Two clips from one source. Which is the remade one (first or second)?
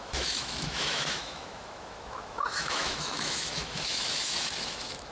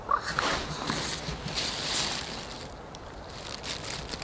first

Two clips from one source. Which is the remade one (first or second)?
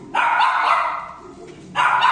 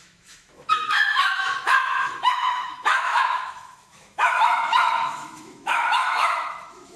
second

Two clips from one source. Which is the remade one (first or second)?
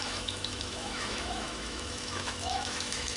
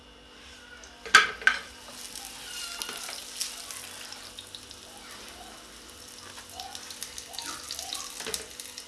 first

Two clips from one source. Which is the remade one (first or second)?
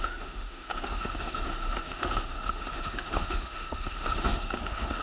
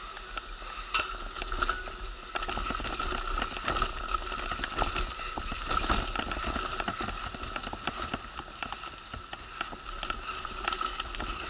first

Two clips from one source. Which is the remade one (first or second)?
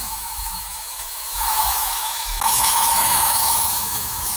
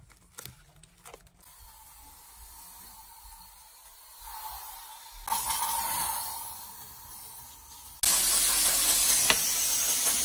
first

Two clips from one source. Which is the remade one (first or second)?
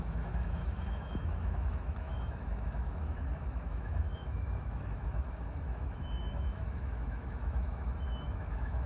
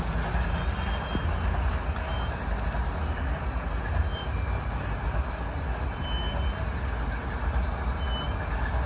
first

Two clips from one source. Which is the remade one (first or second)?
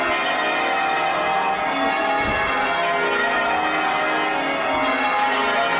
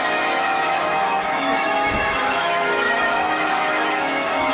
second